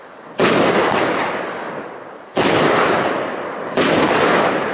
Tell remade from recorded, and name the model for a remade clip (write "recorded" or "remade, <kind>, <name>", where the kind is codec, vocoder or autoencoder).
recorded